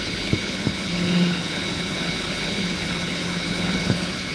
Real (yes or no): no